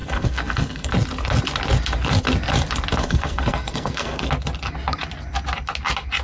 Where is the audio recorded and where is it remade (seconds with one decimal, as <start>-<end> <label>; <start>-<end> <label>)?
0.0-0.9 remade; 0.9-3.0 recorded; 3.0-4.3 remade; 4.3-6.2 recorded